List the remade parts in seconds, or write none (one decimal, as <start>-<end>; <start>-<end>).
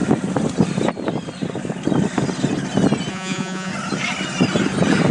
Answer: 3.1-3.7